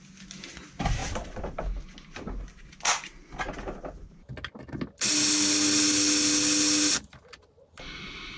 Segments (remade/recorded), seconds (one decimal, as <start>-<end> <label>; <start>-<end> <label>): 0.0-8.4 recorded